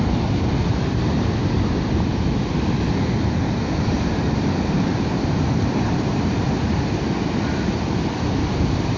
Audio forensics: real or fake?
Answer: fake